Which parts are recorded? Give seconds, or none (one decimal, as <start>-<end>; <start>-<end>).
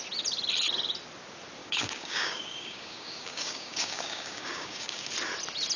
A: 0.0-1.6; 5.1-5.8